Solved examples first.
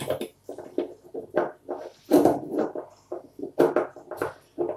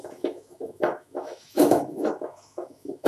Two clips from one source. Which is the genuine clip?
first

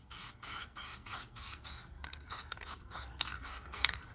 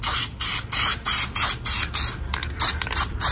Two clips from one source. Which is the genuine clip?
second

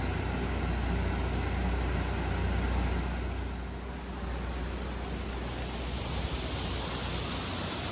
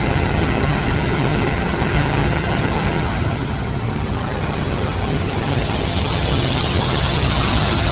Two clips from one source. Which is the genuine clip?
first